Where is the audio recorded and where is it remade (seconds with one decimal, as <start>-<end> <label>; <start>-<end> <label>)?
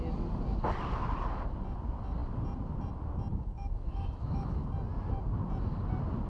0.0-3.3 recorded; 3.3-4.7 remade; 4.7-6.3 recorded